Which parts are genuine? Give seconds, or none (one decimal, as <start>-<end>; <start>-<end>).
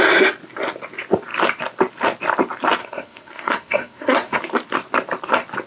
0.0-2.8; 4.4-5.7